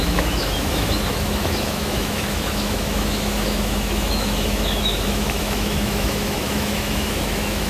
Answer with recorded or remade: remade